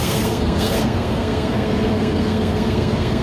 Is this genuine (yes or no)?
no